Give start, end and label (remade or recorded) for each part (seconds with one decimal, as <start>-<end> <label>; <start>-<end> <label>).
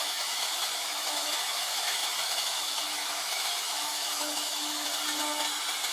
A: 0.0-4.9 remade; 4.9-5.9 recorded